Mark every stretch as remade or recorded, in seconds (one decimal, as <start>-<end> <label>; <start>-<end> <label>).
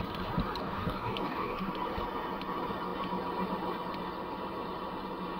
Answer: 0.0-0.6 recorded; 0.6-1.7 remade; 1.7-5.4 recorded